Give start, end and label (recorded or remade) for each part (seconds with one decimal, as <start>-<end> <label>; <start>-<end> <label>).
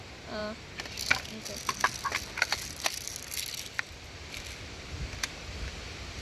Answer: 0.0-6.2 recorded